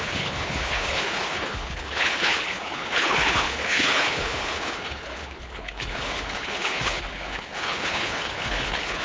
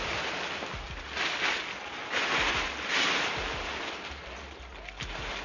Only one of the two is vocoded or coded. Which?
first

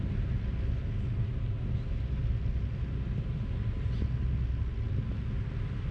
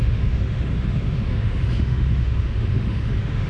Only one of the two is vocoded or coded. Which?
second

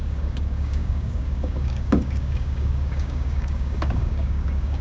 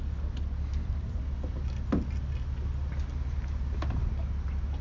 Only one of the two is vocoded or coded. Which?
first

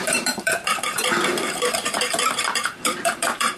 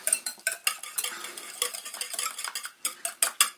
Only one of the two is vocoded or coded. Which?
first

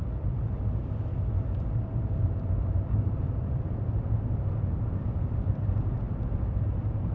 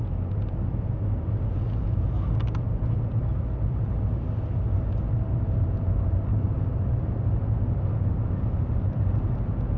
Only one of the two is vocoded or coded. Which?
first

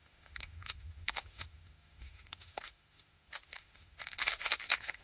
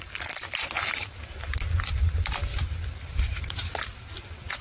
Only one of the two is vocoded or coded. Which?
first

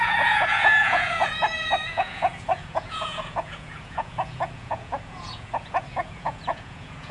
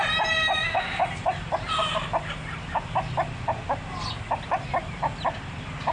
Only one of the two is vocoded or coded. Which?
first